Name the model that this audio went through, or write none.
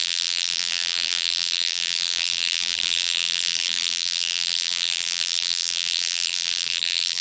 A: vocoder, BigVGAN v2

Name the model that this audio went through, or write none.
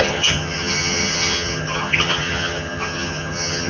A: vocoder, HiFi-GAN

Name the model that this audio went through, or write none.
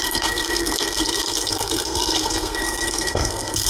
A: codec, SNAC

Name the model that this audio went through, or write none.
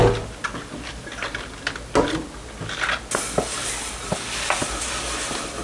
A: none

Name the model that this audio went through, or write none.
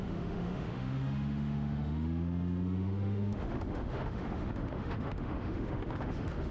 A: autoencoder, DAC-VAE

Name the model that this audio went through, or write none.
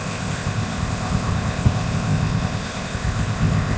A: codec, ZipCodec